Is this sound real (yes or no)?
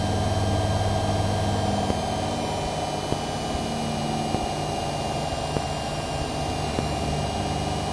yes